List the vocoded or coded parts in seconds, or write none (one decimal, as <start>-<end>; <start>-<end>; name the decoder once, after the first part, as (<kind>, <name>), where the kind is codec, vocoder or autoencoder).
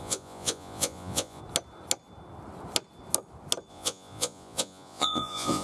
0.0-1.4 (vocoder, Vocos); 3.7-5.6